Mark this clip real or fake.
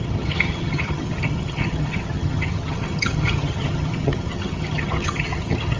fake